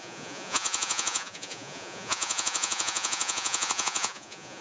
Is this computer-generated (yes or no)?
yes